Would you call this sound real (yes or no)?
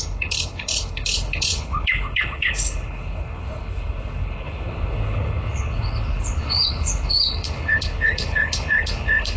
no